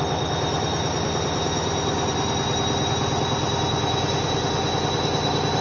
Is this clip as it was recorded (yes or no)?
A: yes